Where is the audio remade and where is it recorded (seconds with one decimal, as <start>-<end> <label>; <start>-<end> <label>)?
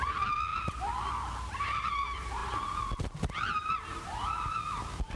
0.0-5.2 recorded